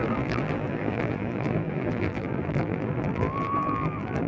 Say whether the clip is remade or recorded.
remade